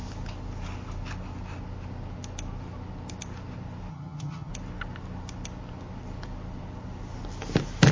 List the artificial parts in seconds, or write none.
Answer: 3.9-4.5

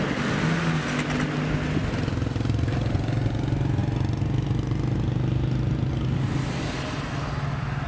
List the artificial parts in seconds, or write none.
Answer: none

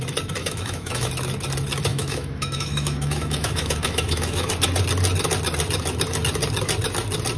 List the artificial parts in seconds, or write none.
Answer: 0.4-1.1; 1.9-4.5

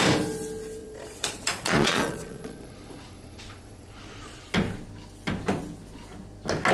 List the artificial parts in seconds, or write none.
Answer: 0.8-4.5

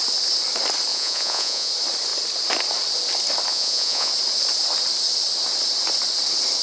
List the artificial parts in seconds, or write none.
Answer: 0.9-1.7; 3.5-4.1

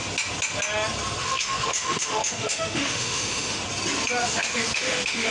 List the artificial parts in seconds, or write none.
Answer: 1.2-3.6; 4.2-5.3

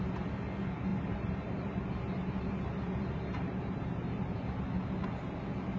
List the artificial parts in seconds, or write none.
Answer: 0.9-4.4